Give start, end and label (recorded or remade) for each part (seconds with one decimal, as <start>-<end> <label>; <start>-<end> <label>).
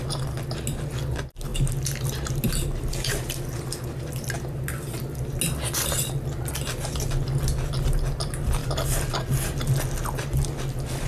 0.0-11.1 recorded